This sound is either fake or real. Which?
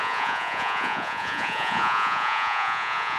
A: fake